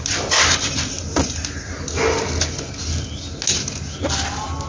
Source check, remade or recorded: recorded